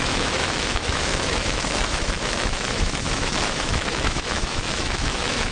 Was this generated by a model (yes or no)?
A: yes